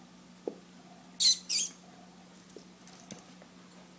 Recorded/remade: recorded